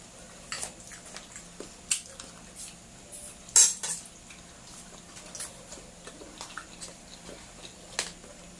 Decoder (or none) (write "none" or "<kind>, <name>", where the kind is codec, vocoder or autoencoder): none